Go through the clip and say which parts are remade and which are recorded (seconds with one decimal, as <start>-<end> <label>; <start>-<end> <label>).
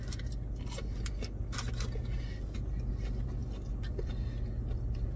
0.0-5.2 recorded